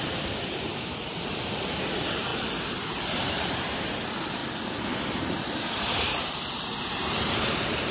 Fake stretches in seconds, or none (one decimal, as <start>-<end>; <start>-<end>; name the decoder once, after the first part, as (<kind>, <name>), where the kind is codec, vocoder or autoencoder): 0.0-2.3 (vocoder, BigVGAN v2); 3.0-4.4; 5.3-7.9